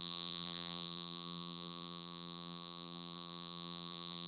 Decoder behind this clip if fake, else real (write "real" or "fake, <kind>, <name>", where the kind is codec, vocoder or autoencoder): fake, vocoder, BigVGAN v2